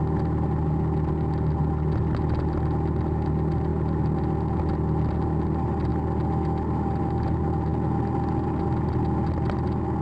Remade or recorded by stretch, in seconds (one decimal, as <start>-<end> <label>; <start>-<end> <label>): 0.0-10.0 recorded

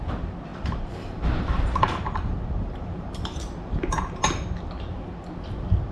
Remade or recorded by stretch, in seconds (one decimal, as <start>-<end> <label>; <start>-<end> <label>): 0.0-0.5 recorded; 0.5-4.0 remade; 4.0-5.9 recorded

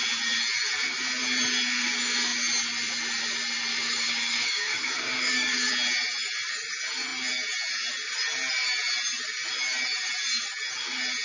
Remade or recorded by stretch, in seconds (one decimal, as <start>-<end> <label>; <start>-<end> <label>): 0.0-3.7 recorded; 3.7-5.7 remade; 5.7-11.2 recorded

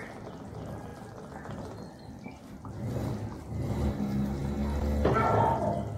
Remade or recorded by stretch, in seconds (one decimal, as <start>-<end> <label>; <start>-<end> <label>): 0.0-6.0 recorded

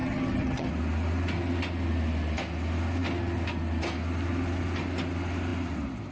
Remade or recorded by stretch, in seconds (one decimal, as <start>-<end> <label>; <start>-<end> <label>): 0.0-0.7 remade; 0.7-6.1 recorded

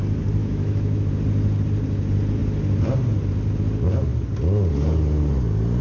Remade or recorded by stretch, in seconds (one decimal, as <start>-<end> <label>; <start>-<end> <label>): 0.0-0.4 recorded; 0.4-1.1 remade; 1.1-5.8 recorded